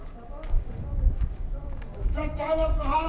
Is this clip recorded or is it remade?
remade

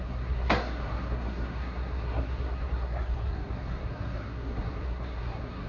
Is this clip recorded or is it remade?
remade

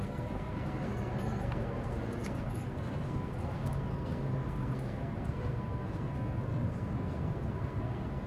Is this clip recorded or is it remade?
remade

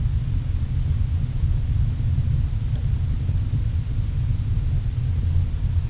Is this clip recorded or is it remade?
recorded